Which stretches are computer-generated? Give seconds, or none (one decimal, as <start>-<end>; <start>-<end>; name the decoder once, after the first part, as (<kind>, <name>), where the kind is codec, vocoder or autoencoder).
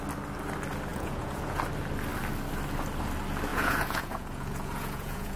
0.9-1.6 (vocoder, Vocos); 3.5-5.4